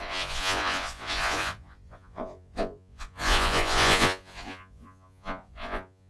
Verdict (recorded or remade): remade